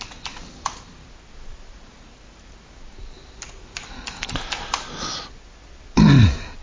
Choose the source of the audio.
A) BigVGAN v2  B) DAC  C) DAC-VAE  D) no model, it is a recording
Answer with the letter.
D